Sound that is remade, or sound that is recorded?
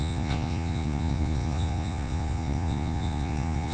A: remade